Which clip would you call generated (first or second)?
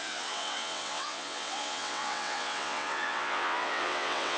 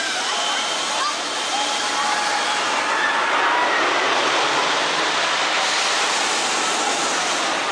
first